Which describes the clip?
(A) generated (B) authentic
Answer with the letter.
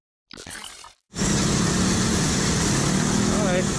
B